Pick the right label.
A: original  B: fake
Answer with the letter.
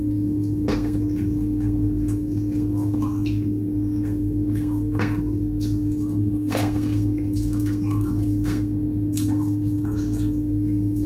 B